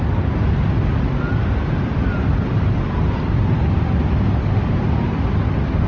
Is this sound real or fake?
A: real